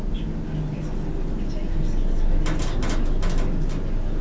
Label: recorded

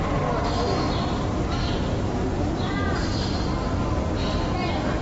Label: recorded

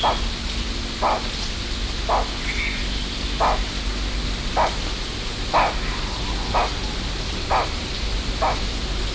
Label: recorded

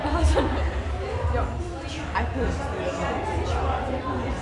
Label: recorded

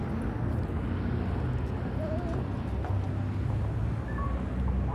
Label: recorded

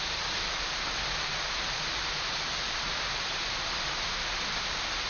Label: recorded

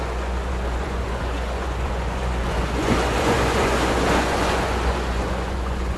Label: remade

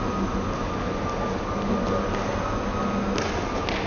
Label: recorded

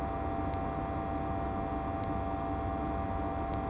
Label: recorded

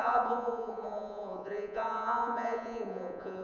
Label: remade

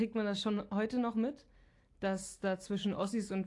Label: recorded